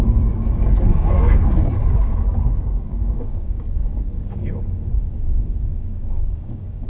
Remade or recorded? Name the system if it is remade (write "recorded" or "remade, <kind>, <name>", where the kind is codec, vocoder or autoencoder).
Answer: remade, codec, DAC